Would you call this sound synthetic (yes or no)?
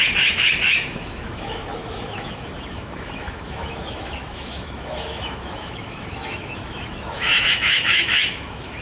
yes